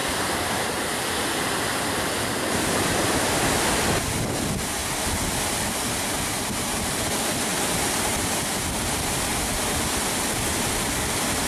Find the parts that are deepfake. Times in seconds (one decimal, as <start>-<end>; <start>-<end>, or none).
0.0-3.6; 9.3-10.0